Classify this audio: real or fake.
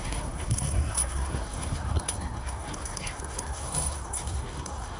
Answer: fake